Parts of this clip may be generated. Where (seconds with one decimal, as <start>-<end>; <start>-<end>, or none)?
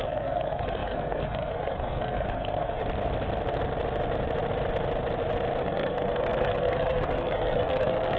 0.0-2.8; 5.6-8.2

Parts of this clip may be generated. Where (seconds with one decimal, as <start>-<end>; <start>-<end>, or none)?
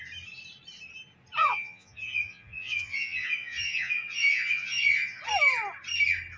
1.4-5.2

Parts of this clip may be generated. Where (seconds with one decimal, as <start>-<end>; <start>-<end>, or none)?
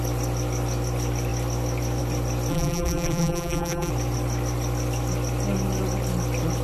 2.5-3.9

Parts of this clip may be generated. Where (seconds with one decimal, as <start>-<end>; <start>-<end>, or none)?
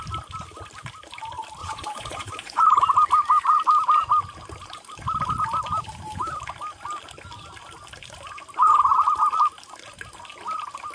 1.6-2.6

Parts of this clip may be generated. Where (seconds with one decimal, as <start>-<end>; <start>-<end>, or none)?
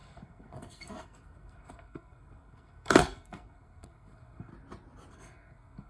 0.0-4.5; 5.1-5.9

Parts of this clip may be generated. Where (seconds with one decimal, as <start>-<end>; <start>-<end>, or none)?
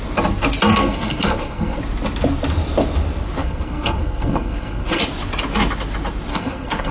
0.7-1.8; 3.4-5.0; 6.3-6.9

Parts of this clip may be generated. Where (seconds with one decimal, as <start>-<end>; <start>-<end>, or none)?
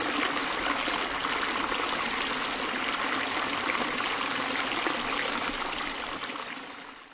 none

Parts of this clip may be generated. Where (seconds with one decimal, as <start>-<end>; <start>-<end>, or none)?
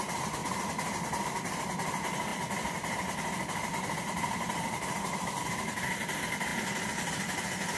0.0-6.5